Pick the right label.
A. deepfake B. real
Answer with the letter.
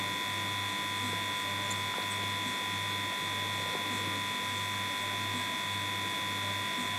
B